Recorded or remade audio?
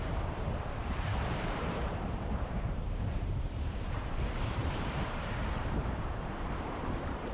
remade